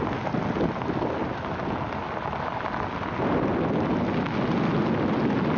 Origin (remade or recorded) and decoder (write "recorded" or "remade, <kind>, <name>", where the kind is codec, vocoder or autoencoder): recorded